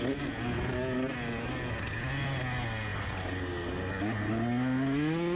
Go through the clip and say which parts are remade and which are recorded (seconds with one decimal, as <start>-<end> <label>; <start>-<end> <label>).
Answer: 0.0-5.4 recorded